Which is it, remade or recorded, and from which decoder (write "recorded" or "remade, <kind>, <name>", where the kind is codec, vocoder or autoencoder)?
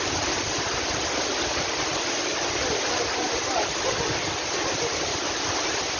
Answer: recorded